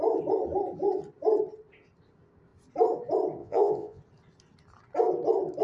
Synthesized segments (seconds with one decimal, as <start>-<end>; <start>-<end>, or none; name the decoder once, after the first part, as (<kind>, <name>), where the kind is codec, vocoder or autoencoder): 3.4-4.0 (vocoder, Vocos)